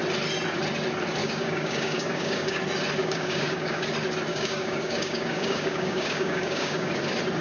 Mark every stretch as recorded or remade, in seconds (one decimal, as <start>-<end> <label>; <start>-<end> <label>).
0.0-1.2 recorded; 1.2-2.6 remade; 2.6-3.0 recorded; 3.0-3.9 remade; 3.9-4.3 recorded; 4.3-6.9 remade; 6.9-7.4 recorded